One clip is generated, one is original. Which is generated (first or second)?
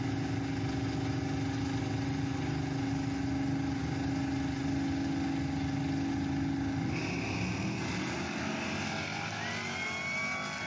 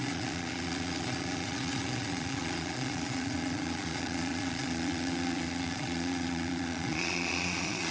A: second